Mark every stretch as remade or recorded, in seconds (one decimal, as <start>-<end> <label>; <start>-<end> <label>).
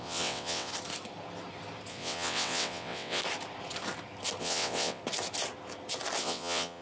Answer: 0.0-0.7 remade; 0.7-1.9 recorded; 1.9-3.2 remade; 3.2-4.4 recorded; 4.4-5.0 remade; 5.0-6.2 recorded; 6.2-6.8 remade